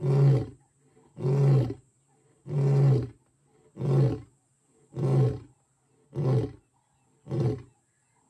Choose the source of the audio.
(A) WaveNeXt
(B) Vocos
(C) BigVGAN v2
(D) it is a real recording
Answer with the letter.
D